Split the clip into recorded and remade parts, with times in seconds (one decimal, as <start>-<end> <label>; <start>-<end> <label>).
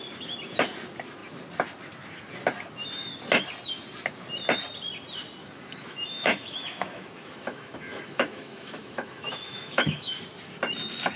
0.0-5.4 recorded; 5.4-10.2 remade; 10.2-11.2 recorded